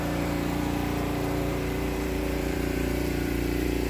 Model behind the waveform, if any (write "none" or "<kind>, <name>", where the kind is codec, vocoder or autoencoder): vocoder, BigVGAN v2